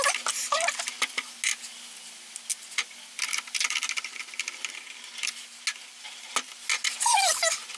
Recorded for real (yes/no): yes